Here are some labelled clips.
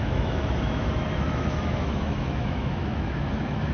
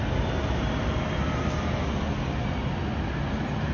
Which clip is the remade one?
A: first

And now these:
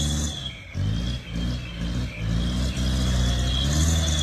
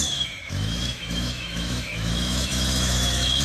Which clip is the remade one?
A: second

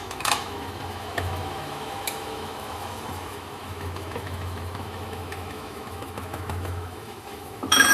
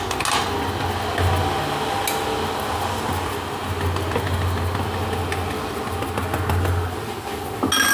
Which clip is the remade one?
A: first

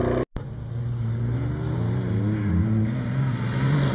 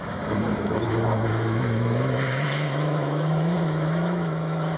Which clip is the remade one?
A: second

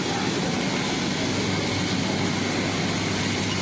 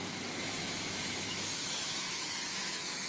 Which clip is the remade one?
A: second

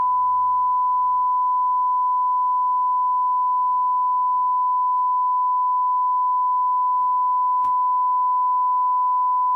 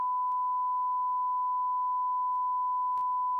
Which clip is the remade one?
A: first